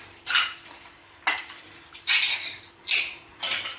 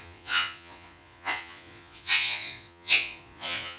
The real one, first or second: first